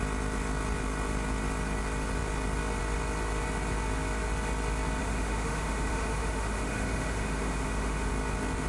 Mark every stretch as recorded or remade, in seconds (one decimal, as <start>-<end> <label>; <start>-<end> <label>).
0.0-5.0 recorded; 5.0-8.1 remade; 8.1-8.7 recorded